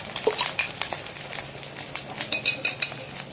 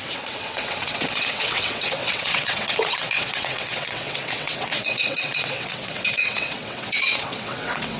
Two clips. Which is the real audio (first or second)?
first